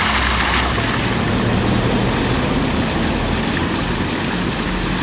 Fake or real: real